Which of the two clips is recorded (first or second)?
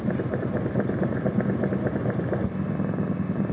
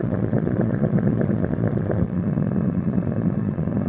first